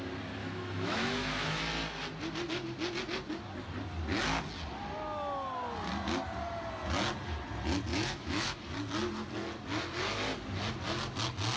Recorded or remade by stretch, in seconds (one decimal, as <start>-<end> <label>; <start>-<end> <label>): 0.0-0.4 recorded; 0.4-1.6 remade; 1.6-7.9 recorded; 7.9-8.6 remade; 8.6-11.6 recorded